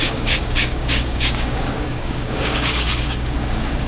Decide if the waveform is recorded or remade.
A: remade